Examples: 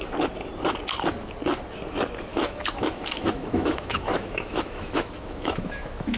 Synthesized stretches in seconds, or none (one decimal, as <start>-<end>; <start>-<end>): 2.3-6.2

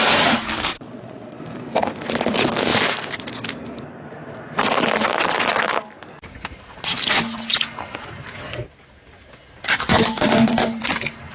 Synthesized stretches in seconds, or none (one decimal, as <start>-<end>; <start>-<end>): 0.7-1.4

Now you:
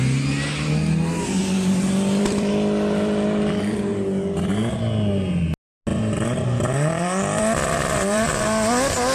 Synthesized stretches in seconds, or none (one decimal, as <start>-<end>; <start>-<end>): 1.4-2.5; 5.9-8.3